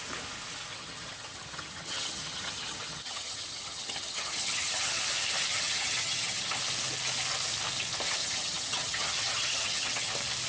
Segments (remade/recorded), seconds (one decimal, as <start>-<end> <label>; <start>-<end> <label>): 0.0-0.7 recorded; 0.7-5.0 remade; 5.0-5.5 recorded; 5.5-6.6 remade; 6.6-8.2 recorded; 8.2-10.1 remade; 10.1-10.5 recorded